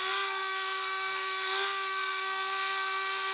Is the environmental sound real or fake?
fake